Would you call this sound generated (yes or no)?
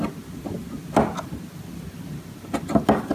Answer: no